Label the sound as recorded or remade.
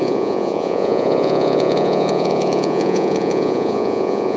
remade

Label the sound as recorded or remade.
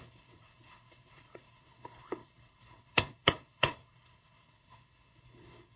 remade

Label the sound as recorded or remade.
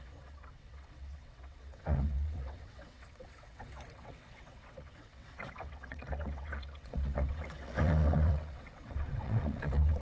remade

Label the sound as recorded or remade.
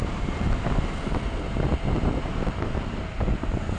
recorded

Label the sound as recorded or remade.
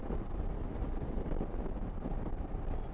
recorded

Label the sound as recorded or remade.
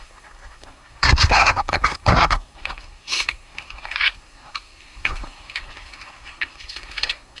remade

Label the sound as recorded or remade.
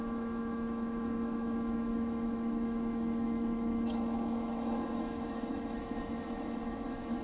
remade